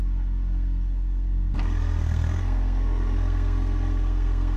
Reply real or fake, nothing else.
fake